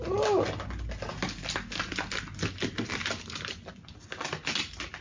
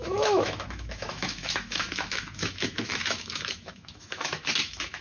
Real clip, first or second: first